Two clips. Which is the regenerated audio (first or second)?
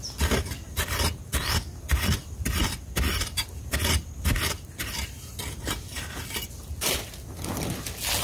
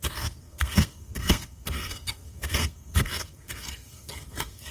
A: second